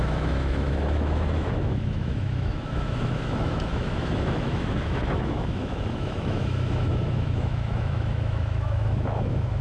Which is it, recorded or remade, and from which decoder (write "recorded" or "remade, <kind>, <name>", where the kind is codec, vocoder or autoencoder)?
remade, autoencoder, DAC-VAE